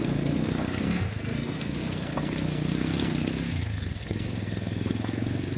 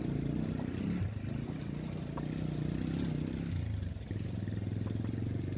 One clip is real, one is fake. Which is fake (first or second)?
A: first